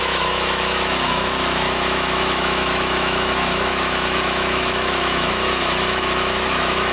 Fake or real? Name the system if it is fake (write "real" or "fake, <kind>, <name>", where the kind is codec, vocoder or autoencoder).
fake, autoencoder, DAC-VAE